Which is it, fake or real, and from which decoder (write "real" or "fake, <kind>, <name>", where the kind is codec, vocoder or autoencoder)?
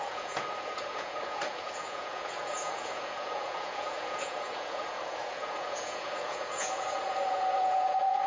fake, vocoder, Vocos